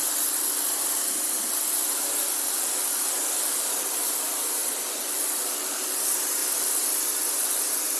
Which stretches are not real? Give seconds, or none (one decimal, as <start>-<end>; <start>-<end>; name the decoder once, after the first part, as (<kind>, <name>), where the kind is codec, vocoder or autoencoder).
3.5-6.4 (vocoder, BigVGAN v2)